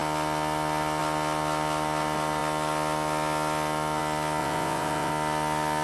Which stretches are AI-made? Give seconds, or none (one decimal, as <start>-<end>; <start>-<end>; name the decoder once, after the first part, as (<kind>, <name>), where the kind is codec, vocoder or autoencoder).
4.4-5.1 (vocoder, Vocos)